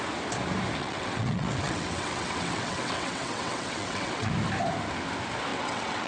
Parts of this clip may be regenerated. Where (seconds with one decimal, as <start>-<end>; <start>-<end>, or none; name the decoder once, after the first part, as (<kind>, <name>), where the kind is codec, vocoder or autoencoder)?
0.8-4.3 (vocoder, WaveNeXt); 5.5-6.1